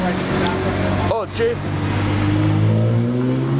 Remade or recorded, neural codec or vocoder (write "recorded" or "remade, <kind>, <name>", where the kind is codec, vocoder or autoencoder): recorded